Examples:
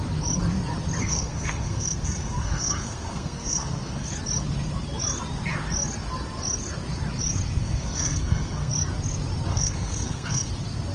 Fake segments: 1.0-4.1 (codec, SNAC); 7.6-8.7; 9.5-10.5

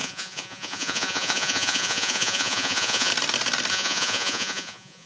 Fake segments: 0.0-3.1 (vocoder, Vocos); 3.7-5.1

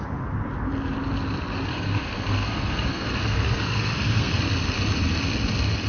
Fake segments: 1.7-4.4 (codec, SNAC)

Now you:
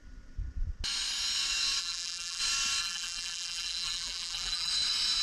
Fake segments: 1.8-2.4 (vocoder, BigVGAN v2); 2.8-4.7

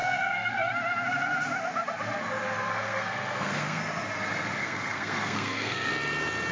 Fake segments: 0.0-0.7 (codec, SNAC); 2.7-3.8; 4.6-5.9

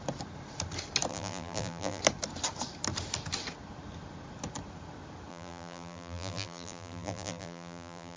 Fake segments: 1.1-2.0 (vocoder, BigVGAN v2); 5.3-8.2

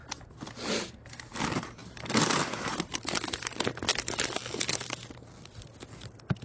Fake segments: none

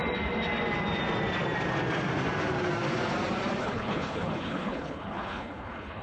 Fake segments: 3.6-6.0 (codec, HILCodec)